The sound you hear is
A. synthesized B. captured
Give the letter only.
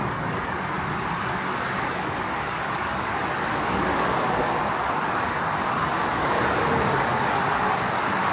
A